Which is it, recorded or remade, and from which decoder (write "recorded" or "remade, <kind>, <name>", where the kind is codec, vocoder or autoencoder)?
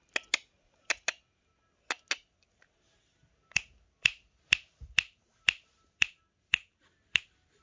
recorded